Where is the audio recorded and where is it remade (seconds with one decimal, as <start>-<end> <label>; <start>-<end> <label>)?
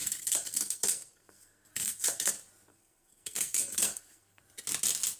0.0-2.3 remade; 2.3-2.7 recorded; 2.7-4.4 remade; 4.4-5.2 recorded